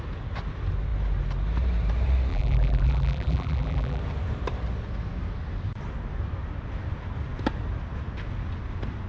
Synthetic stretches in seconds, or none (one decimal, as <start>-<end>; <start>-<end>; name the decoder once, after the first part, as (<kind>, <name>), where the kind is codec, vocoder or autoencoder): 2.3-4.0 (vocoder, BigVGAN v2)